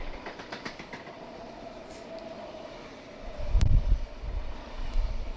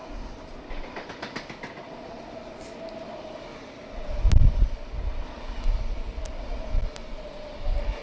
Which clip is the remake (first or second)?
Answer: first